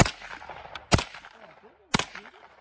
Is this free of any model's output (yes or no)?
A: yes